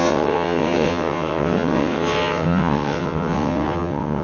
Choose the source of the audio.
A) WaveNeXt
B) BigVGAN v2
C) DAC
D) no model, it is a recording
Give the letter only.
A